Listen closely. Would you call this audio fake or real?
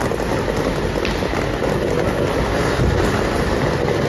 real